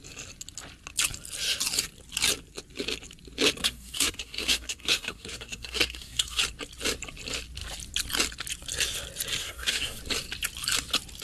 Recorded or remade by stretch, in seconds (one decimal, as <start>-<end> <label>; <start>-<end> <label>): 0.0-3.6 recorded; 3.6-6.4 remade; 6.4-9.4 recorded; 9.4-10.0 remade; 10.0-11.2 recorded